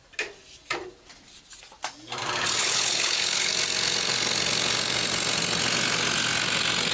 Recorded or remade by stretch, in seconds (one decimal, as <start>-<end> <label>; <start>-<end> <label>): 0.0-2.6 recorded; 2.6-3.5 remade; 3.5-6.9 recorded